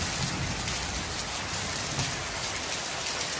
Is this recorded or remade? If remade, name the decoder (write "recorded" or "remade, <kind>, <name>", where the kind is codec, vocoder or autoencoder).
recorded